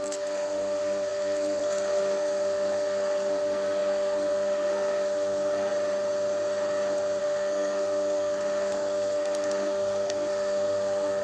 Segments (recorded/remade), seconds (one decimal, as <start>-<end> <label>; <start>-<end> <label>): 0.0-5.7 remade; 5.7-7.2 recorded; 7.2-11.2 remade